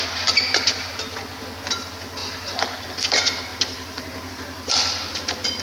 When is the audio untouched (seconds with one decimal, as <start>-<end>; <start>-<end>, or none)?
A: 0.0-5.6